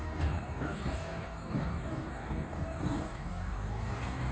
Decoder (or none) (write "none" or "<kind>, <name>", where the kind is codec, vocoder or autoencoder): codec, DAC